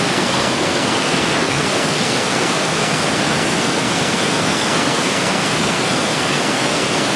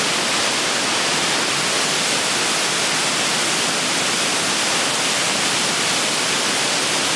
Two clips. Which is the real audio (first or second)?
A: second